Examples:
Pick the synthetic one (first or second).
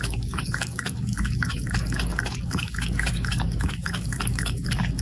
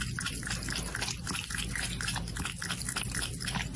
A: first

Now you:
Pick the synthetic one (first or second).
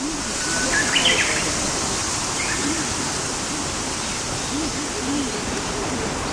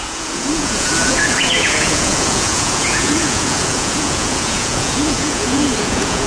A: second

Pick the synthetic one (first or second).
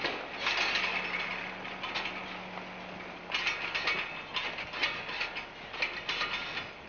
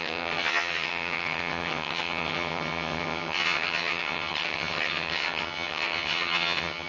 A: second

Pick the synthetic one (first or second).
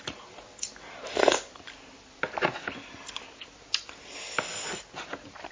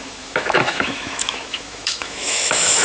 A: second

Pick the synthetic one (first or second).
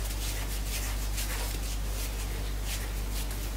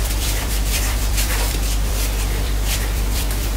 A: second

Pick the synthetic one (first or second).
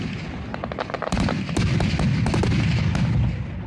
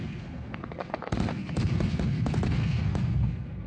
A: second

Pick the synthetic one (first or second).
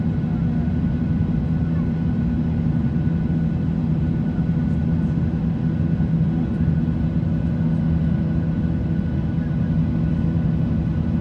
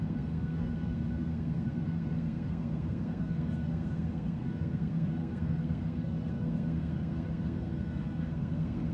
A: second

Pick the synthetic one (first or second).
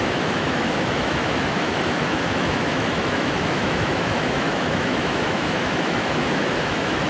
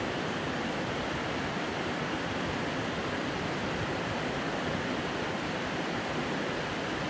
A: first